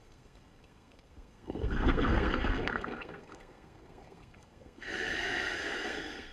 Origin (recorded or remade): remade